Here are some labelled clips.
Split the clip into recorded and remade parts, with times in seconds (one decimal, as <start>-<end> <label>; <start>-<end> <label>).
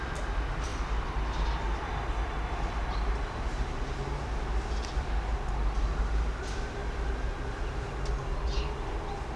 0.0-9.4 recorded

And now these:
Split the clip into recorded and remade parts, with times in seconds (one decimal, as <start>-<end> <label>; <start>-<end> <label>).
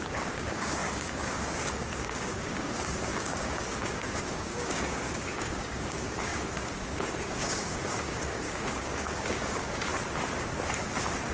0.0-9.9 remade; 9.9-11.3 recorded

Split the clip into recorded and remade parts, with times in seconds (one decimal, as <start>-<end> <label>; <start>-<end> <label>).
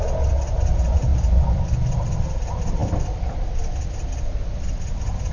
0.0-5.3 recorded